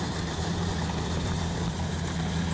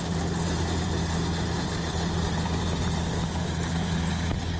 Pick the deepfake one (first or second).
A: first